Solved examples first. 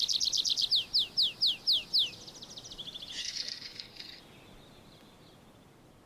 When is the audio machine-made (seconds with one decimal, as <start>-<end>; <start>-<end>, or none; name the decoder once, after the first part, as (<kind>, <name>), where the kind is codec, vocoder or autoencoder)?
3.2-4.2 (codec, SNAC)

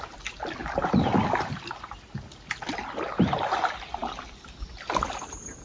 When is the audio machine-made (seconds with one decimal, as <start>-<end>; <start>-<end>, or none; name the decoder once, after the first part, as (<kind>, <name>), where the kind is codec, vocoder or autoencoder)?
none

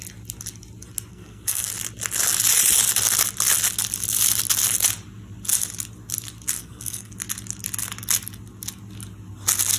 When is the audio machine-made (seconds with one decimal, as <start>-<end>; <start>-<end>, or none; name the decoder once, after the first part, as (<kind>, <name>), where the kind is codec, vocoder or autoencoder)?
1.1-1.7 (codec, SNAC); 6.6-7.1

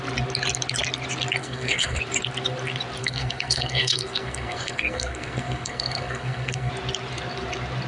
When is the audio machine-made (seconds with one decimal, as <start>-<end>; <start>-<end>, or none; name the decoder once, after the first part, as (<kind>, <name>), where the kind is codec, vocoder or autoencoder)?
1.4-2.0 (codec, SNAC); 3.0-6.7

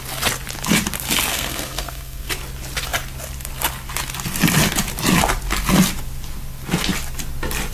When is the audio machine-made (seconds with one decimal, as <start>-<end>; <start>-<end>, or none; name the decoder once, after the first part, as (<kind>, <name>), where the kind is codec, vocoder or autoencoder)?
1.3-2.3 (codec, SNAC)

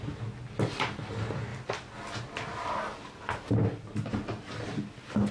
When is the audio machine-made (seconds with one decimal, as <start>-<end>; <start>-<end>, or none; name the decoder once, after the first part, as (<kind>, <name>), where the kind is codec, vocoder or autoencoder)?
none